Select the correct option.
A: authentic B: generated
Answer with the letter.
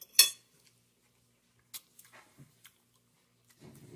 A